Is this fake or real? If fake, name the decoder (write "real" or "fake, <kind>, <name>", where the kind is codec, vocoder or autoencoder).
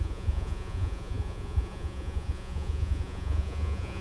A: fake, vocoder, Vocos